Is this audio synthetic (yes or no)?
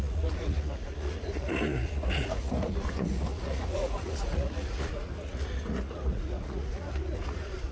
yes